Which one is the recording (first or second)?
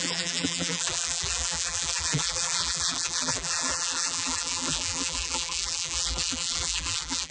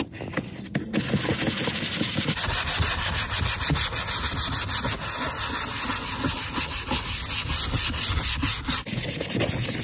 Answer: second